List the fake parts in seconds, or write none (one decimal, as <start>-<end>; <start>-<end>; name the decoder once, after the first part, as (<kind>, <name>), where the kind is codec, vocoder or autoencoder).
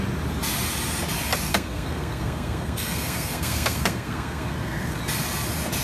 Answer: 1.5-5.0 (codec, SNAC)